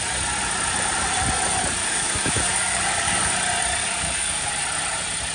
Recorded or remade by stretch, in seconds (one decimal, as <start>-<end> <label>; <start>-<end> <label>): 0.0-1.8 recorded; 1.8-3.3 remade; 3.3-3.8 recorded; 3.8-4.5 remade; 4.5-5.3 recorded